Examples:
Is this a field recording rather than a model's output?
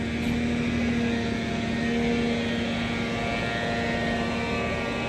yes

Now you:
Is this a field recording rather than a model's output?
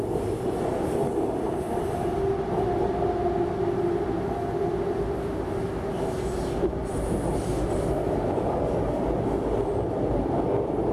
yes